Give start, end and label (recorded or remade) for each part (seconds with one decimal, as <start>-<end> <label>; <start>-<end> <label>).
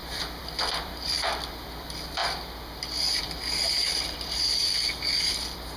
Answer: 0.0-2.2 remade; 2.2-3.2 recorded; 3.2-5.8 remade